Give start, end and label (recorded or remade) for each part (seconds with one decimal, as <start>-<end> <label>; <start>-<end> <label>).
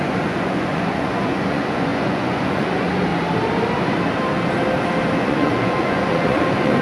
0.0-3.1 remade; 3.1-5.2 recorded; 5.2-6.8 remade